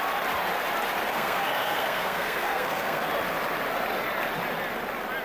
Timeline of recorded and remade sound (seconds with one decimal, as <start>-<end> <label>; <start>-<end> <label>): 0.0-1.1 recorded; 1.1-3.1 remade; 3.1-5.2 recorded